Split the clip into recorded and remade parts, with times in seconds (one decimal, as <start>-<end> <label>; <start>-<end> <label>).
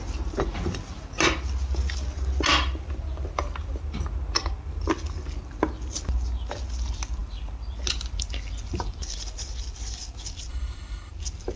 0.0-10.5 recorded; 10.5-11.1 remade; 11.1-11.6 recorded